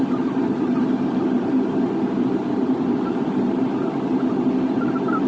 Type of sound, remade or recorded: remade